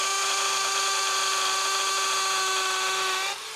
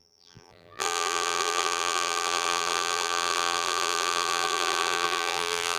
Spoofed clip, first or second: second